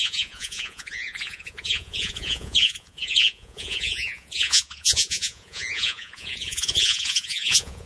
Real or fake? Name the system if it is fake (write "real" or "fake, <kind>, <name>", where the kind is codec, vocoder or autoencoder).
fake, vocoder, Vocos